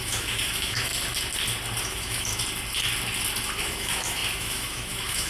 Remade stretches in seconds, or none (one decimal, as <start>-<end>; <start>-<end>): 0.0-0.9; 1.8-2.3; 3.6-5.3